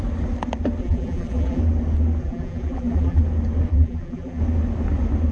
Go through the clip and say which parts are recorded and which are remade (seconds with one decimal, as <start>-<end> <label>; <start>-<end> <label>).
0.0-0.8 recorded; 0.8-1.6 remade; 1.6-2.2 recorded; 2.2-3.2 remade; 3.2-3.7 recorded; 3.7-4.4 remade; 4.4-5.3 recorded